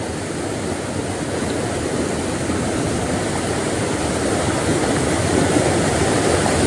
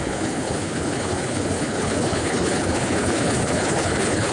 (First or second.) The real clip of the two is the first